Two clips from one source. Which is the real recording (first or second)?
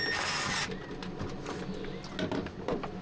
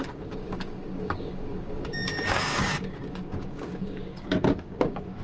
first